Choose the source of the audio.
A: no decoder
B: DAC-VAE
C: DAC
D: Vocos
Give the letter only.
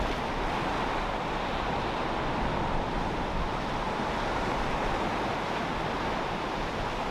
A